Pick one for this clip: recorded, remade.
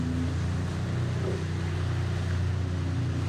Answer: recorded